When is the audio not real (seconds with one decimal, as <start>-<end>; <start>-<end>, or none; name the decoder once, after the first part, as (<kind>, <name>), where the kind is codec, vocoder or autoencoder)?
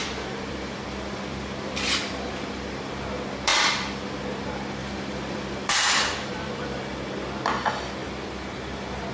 0.0-2.9 (vocoder, BigVGAN v2); 3.5-4.2; 4.8-6.8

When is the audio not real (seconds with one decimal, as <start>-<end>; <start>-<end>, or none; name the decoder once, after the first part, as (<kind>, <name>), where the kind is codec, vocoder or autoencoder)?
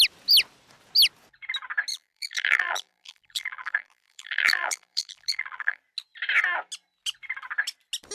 1.9-5.8 (vocoder, BigVGAN v2)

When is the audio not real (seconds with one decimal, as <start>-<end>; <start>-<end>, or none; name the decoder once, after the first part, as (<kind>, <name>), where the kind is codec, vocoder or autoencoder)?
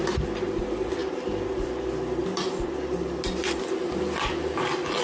none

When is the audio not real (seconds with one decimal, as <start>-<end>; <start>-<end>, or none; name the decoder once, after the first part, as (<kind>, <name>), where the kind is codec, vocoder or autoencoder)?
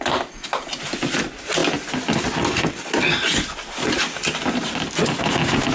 none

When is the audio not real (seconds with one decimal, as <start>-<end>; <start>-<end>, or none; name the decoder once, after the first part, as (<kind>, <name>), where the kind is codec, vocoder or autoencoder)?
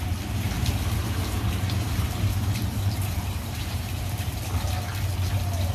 1.0-4.4 (vocoder, BigVGAN v2)